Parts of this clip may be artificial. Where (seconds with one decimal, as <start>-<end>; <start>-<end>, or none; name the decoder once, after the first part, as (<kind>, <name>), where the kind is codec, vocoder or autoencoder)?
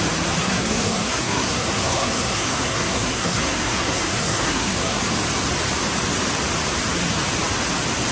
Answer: 0.4-5.0 (codec, SNAC)